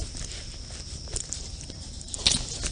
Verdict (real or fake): real